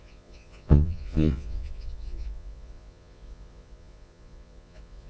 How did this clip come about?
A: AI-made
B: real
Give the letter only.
A